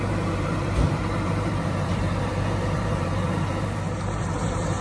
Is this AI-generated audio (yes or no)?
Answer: yes